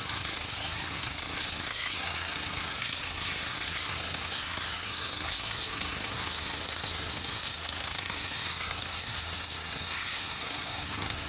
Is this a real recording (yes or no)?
no